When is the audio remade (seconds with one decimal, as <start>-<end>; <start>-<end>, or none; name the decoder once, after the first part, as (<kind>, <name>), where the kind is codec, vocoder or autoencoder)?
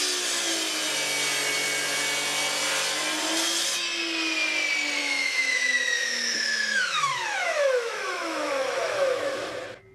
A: 5.0-9.5 (autoencoder, DAC-VAE)